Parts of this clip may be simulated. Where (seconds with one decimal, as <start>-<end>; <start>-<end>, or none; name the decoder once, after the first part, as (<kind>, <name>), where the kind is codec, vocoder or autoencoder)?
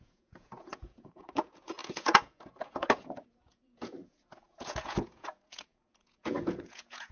0.0-7.1 (vocoder, Vocos)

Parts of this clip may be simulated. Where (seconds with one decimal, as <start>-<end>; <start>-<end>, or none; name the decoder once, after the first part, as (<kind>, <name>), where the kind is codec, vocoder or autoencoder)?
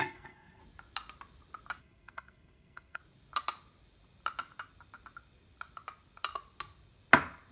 0.0-0.6 (codec, SNAC); 1.8-3.0